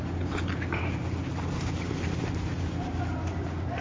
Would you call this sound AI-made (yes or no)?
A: no